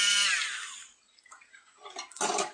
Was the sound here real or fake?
real